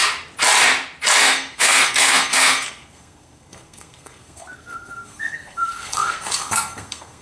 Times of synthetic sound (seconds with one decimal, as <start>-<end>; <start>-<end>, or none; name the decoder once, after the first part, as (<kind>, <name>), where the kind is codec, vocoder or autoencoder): 1.2-7.2 (codec, SNAC)